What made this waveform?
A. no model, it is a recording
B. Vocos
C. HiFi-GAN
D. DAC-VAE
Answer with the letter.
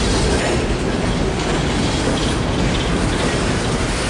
A